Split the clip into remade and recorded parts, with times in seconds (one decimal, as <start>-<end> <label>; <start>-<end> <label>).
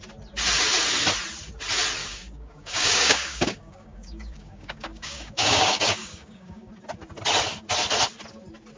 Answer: 0.0-2.0 recorded; 2.0-6.7 remade; 6.7-8.8 recorded